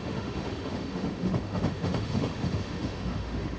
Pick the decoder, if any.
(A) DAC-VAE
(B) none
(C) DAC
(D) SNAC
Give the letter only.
A